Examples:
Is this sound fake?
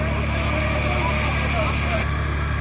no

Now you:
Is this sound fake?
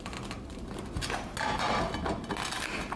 no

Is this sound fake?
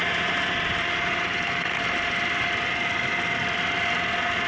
no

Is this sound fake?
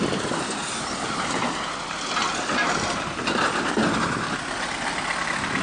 no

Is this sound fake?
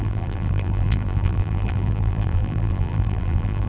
yes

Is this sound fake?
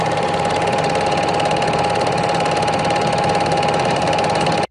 yes